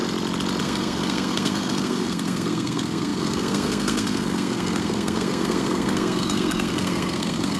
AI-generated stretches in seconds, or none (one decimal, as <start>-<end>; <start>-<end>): 0.6-7.6